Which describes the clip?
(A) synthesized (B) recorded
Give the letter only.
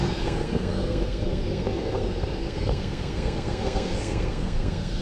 A